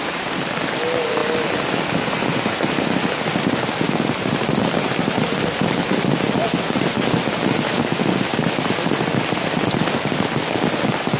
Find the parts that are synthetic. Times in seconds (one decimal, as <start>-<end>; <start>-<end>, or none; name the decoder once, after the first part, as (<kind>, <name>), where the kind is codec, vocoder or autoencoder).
none

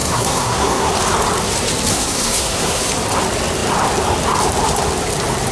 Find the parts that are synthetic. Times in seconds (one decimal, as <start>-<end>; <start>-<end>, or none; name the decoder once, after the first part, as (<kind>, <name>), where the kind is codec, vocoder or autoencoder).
0.0-0.9 (codec, SNAC); 1.9-2.8